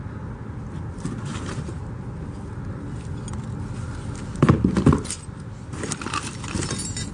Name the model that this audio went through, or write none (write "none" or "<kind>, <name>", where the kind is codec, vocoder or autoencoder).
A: none